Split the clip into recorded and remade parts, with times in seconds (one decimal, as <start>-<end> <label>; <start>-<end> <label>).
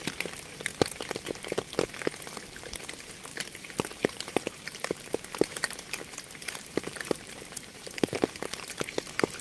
0.0-3.3 recorded; 3.3-8.2 remade; 8.2-9.4 recorded